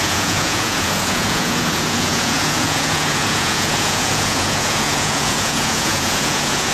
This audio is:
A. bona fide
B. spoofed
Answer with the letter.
B